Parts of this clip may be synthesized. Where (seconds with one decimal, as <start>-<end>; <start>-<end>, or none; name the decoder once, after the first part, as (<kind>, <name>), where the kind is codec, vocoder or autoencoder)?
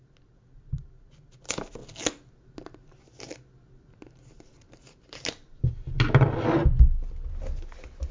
none